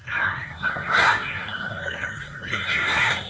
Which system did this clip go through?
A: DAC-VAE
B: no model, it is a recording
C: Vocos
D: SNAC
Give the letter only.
D